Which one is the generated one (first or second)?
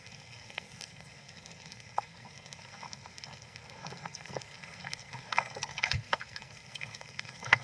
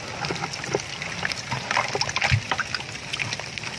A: first